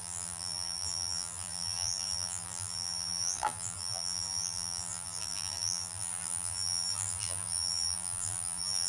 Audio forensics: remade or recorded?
remade